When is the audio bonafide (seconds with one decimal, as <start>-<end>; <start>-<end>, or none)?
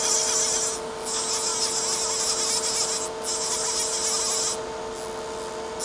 0.0-5.8